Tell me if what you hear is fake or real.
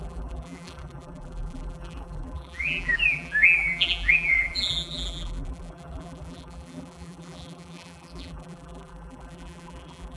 fake